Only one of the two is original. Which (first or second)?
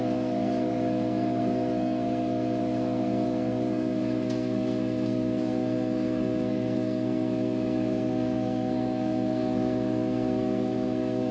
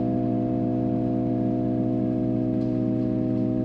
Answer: second